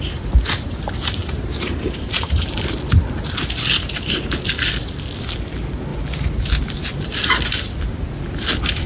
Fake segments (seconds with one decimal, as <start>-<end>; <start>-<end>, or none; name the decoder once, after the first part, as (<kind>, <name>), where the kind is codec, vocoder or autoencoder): 1.2-2.7 (vocoder, BigVGAN v2)